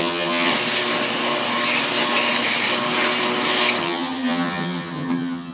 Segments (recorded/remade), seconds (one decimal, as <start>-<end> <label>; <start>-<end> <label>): 0.0-0.5 remade; 0.5-3.8 recorded; 3.8-5.5 remade